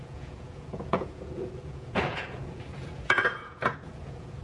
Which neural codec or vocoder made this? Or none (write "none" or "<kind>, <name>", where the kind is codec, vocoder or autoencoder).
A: vocoder, Vocos